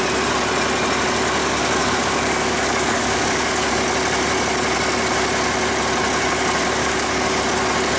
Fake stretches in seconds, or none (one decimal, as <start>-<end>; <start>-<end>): 1.4-3.7; 6.8-7.4